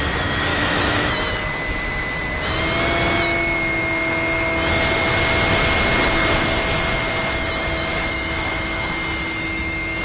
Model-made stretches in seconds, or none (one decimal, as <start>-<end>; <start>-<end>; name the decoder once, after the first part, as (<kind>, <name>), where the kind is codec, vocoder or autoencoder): 0.5-1.1 (autoencoder, DAC-VAE); 7.9-8.9